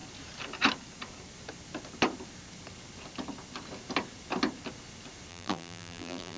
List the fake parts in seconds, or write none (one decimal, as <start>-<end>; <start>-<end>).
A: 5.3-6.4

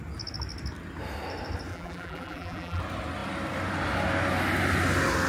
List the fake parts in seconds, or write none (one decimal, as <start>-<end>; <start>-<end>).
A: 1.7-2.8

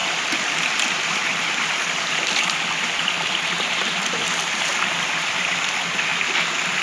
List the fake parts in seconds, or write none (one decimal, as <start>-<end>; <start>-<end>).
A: 0.0-3.3

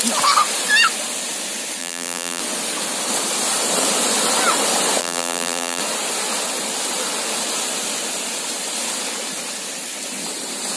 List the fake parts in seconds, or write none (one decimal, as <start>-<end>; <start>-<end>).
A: 1.8-2.4; 5.0-5.8

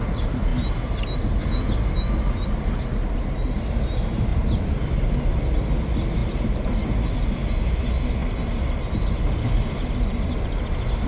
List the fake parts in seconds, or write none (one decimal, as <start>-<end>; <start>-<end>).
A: 4.3-5.4

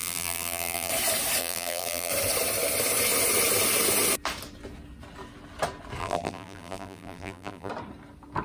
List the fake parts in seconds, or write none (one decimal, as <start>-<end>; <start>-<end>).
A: 0.0-0.9; 1.4-2.1; 6.0-7.7

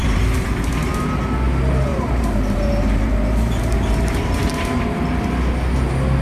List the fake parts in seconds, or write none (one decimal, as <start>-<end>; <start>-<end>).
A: 0.0-0.7; 1.9-4.9

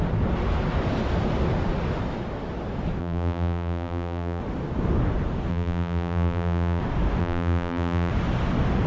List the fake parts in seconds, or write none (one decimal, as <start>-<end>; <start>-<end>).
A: 3.0-4.4; 5.5-6.8; 7.2-8.1